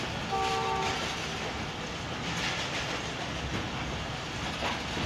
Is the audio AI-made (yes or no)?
no